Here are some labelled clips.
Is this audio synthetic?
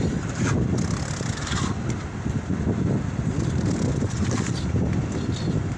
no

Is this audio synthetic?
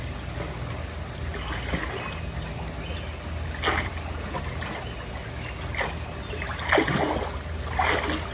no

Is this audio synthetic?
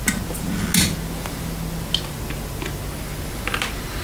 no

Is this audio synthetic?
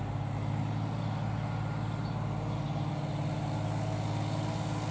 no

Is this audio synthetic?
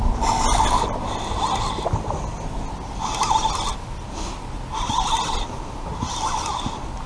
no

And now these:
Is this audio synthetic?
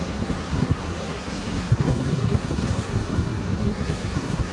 yes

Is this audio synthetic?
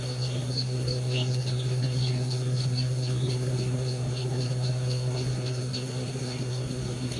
yes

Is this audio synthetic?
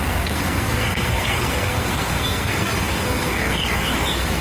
yes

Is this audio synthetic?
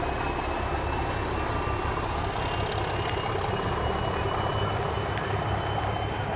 no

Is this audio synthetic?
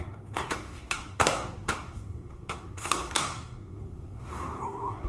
yes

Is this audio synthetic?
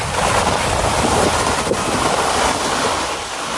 no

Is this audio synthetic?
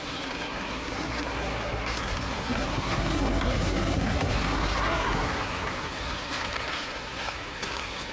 yes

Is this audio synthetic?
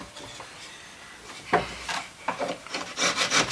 no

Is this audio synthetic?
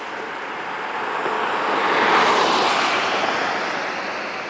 no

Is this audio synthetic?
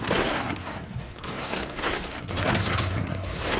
yes